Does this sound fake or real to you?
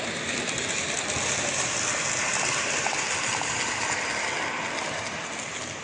real